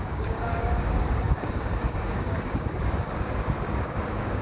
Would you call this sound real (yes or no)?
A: no